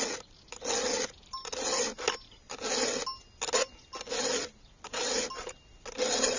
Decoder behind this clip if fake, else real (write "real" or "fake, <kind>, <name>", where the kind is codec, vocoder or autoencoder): real